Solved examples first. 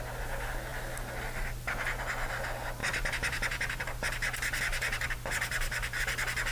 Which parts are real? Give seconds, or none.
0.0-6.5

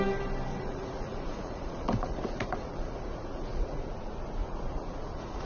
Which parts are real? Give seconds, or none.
0.0-0.5; 3.8-4.4

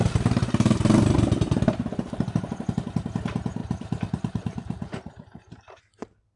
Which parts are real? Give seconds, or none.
0.0-3.6; 5.8-6.4

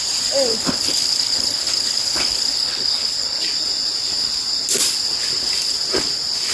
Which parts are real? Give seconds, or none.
0.0-0.5; 3.4-6.5